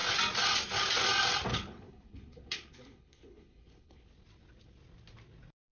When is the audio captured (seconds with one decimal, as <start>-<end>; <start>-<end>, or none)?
0.0-1.5; 4.1-5.7